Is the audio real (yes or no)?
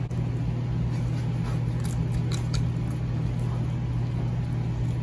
yes